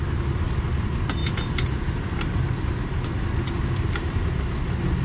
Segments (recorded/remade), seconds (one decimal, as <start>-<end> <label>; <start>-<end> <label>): 0.0-1.2 remade; 1.2-3.8 recorded; 3.8-5.0 remade